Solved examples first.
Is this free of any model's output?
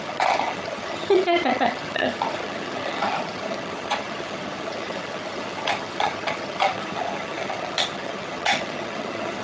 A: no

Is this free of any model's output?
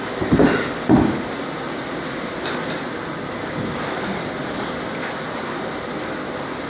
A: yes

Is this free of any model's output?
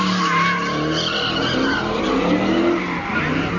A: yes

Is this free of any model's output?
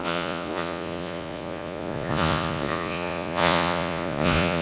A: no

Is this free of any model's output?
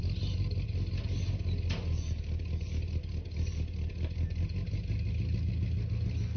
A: yes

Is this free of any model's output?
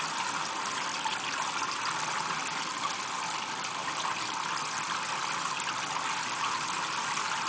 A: yes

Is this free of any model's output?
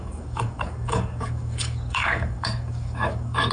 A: no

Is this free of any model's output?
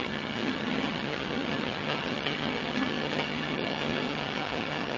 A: no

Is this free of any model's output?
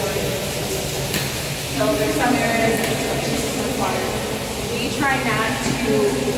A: yes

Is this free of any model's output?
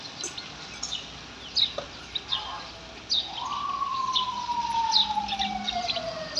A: yes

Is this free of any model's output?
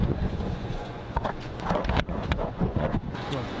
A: no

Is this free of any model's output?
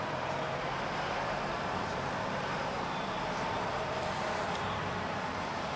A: no